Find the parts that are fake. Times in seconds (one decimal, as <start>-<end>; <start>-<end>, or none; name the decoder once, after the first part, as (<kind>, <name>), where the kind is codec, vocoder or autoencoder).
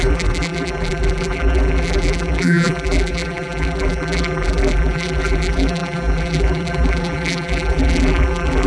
0.0-8.7 (vocoder, BigVGAN v2)